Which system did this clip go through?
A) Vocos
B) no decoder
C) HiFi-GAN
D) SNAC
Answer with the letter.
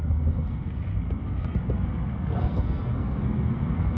D